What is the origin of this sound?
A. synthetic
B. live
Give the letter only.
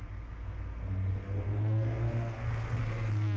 A